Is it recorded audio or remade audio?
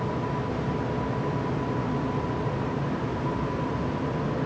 recorded